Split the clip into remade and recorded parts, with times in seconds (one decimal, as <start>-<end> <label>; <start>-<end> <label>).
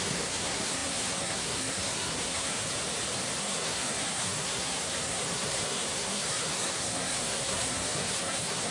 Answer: 0.0-2.7 remade; 2.7-3.4 recorded; 3.4-8.7 remade